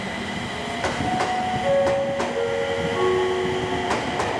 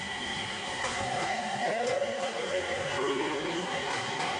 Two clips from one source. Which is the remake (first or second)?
second